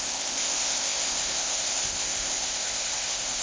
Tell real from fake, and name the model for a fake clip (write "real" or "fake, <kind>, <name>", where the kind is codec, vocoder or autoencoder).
fake, codec, ZipCodec